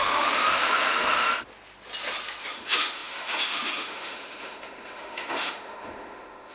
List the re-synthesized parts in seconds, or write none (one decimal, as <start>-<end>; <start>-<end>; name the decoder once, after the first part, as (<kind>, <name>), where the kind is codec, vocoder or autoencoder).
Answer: 0.0-1.3 (autoencoder, DAC-VAE); 2.4-6.5